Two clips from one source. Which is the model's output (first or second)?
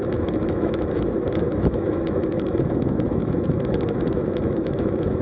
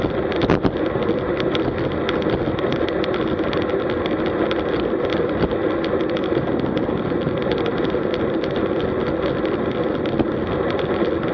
first